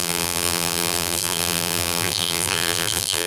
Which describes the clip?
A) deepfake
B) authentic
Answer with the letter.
A